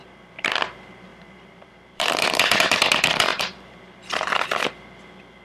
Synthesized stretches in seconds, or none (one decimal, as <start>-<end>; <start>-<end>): 0.0-0.6; 1.1-2.3; 3.3-3.8